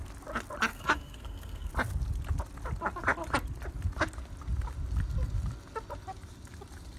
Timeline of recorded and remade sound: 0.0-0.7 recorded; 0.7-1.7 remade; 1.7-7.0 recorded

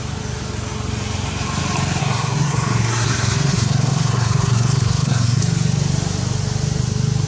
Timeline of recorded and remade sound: 0.0-2.0 recorded; 2.0-5.4 remade; 5.4-7.3 recorded

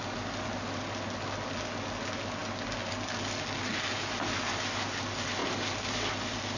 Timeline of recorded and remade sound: 0.0-6.6 recorded

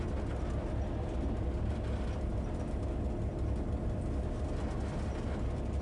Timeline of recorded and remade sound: 0.0-5.8 recorded

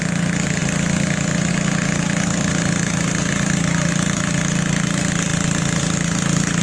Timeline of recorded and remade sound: 0.0-6.6 recorded

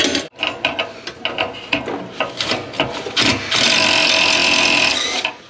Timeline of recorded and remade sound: 0.0-5.5 recorded

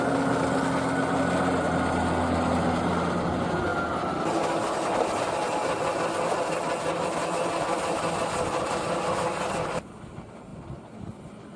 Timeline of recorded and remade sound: 0.0-11.6 recorded

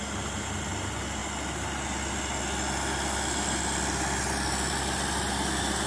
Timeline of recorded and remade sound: 0.0-5.9 recorded